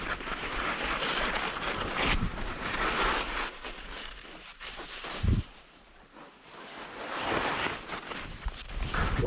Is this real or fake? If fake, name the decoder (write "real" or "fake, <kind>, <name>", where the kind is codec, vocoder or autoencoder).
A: real